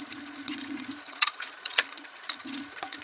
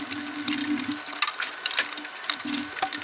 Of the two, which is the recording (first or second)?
second